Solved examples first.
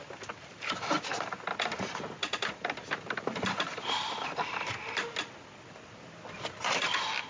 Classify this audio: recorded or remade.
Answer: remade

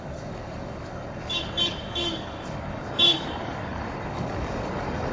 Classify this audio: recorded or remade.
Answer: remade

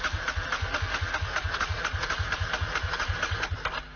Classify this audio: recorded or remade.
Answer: recorded